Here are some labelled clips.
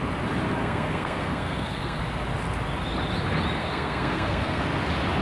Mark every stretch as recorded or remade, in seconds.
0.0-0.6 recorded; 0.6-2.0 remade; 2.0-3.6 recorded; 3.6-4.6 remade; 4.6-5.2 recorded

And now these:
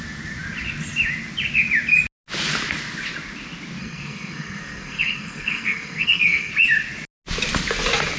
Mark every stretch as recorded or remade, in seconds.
0.0-3.8 recorded; 3.8-6.5 remade; 6.5-8.2 recorded

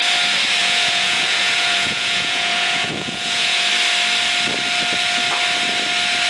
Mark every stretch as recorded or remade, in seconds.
0.0-0.6 recorded; 0.6-3.7 remade; 3.7-6.3 recorded

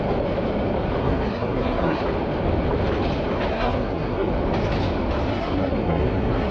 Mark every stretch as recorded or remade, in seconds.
0.0-1.0 recorded; 1.0-2.0 remade; 2.0-3.5 recorded; 3.5-4.3 remade; 4.3-5.3 recorded; 5.3-6.5 remade

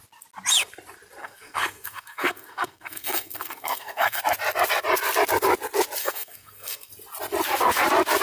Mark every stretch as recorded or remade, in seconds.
0.0-1.2 recorded; 1.2-4.2 remade; 4.2-6.0 recorded; 6.0-6.9 remade; 6.9-8.2 recorded

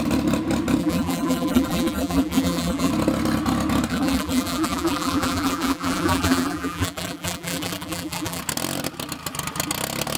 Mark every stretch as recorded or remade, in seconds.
0.0-0.8 recorded; 0.8-2.9 remade; 2.9-3.9 recorded; 3.9-8.4 remade; 8.4-10.2 recorded

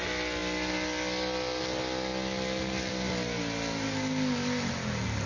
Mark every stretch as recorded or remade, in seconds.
0.0-5.3 recorded

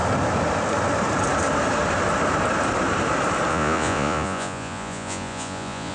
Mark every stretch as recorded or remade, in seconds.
0.0-3.5 recorded; 3.5-5.9 remade